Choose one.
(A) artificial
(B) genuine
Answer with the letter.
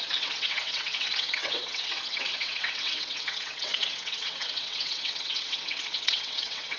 A